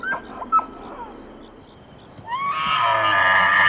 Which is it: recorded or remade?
recorded